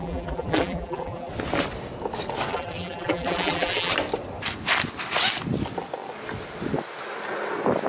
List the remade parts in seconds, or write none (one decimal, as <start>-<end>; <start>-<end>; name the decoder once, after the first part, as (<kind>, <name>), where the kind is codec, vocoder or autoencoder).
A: 0.0-1.3 (vocoder, BigVGAN v2); 2.5-3.9